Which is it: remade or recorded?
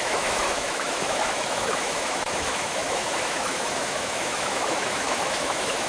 remade